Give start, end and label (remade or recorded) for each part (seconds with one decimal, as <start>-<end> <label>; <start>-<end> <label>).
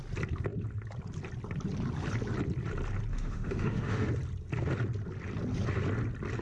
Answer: 0.0-3.1 recorded; 3.1-4.1 remade; 4.1-6.4 recorded